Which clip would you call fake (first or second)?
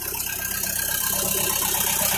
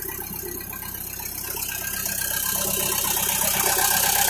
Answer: first